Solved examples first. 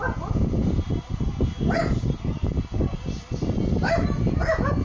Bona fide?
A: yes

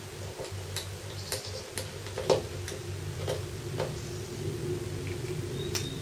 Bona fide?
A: yes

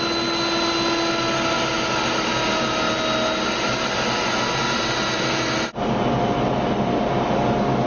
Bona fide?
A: yes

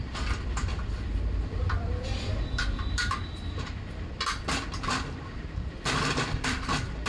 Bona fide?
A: no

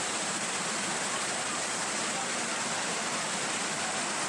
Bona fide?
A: yes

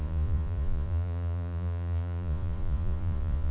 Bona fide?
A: no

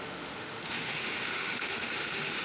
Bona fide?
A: no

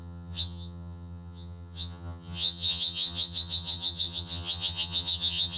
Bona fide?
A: no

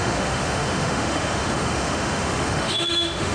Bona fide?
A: no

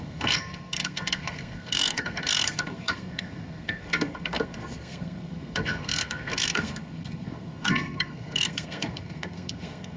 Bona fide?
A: no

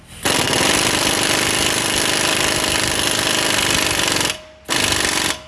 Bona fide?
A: yes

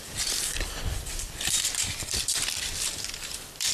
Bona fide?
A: no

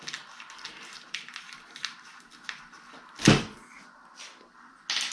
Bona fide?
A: yes